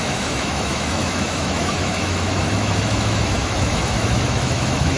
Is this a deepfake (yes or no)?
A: yes